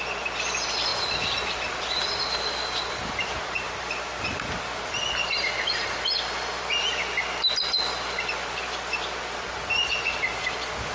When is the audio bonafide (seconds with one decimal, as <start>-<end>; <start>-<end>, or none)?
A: 0.0-10.9